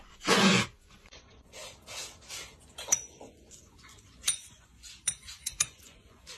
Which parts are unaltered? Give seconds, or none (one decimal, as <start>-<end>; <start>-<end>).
1.6-2.6